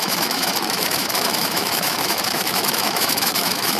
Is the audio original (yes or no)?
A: no